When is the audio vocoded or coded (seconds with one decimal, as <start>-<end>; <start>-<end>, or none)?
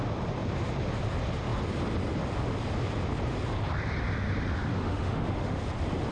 4.7-5.6